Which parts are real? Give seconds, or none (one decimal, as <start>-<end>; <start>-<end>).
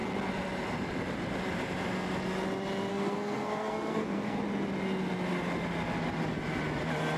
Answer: 0.0-2.9; 4.4-7.2